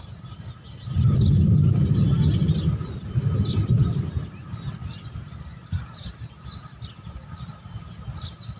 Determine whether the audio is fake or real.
real